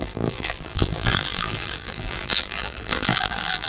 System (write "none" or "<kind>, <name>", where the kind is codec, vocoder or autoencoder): vocoder, BigVGAN v2